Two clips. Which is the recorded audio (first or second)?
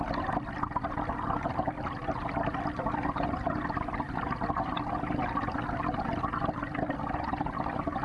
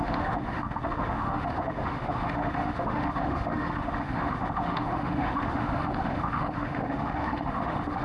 first